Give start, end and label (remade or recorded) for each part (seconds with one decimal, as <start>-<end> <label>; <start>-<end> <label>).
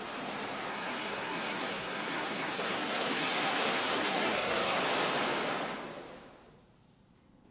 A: 0.0-0.7 recorded; 0.7-4.8 remade; 4.8-7.5 recorded